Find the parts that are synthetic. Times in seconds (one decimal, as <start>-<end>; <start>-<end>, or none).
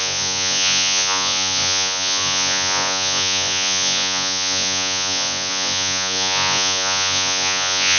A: 0.0-8.0